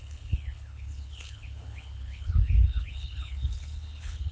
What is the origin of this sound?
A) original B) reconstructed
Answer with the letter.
B